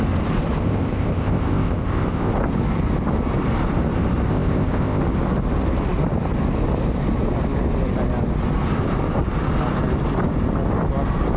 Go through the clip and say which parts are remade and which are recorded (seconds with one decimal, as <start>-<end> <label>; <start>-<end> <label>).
0.0-0.6 recorded; 0.6-2.3 remade; 2.3-4.3 recorded; 4.3-5.0 remade; 5.0-11.4 recorded